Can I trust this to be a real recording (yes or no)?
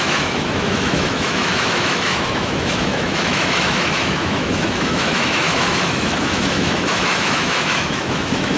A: no